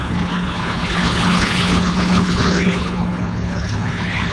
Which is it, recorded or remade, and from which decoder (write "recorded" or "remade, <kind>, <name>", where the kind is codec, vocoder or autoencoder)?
remade, codec, HILCodec